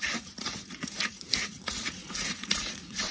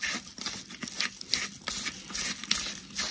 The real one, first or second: second